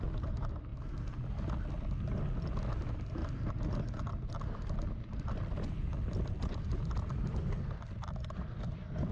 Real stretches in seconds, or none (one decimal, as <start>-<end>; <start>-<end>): 0.7-2.5; 3.2-4.4; 5.9-6.6